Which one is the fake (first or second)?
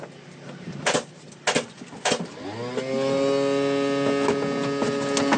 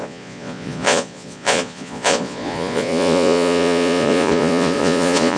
second